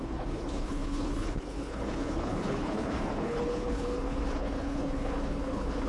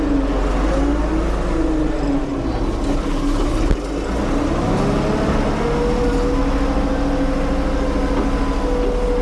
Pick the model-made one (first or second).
first